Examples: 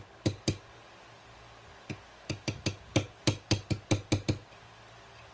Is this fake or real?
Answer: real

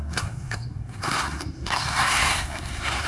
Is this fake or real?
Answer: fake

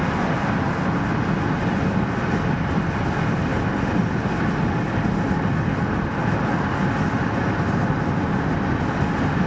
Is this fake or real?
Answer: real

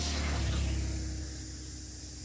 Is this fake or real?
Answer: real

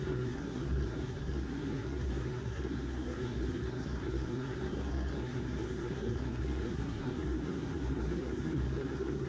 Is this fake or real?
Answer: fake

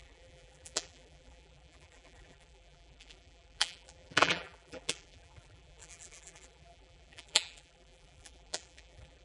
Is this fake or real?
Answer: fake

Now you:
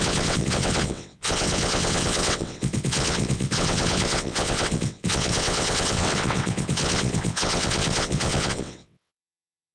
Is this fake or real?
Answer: fake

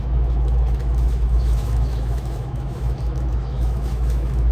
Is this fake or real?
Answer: fake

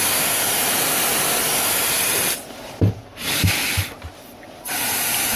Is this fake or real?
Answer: real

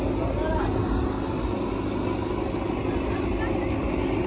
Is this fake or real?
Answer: real